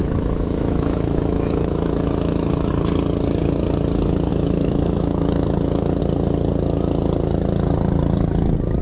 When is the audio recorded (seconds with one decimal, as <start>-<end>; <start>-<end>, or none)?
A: 2.7-4.3; 6.0-8.8